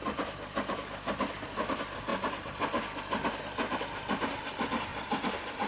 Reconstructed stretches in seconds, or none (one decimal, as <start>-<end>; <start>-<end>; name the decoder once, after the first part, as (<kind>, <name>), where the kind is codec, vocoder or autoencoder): 4.9-5.7 (vocoder, BigVGAN v2)